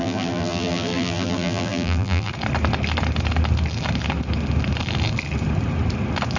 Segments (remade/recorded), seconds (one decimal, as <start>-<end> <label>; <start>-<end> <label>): 0.0-2.3 remade; 2.3-6.4 recorded